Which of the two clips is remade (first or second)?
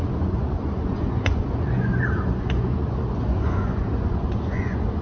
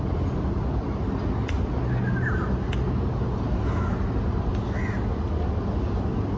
first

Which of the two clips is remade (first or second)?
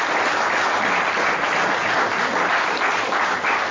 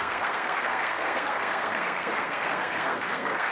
second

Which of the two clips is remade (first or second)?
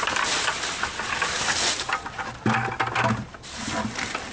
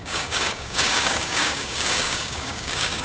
second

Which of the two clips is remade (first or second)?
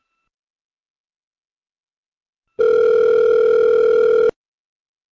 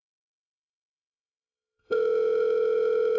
second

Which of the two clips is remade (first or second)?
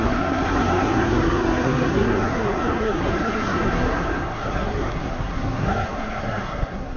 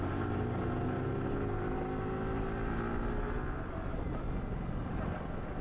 first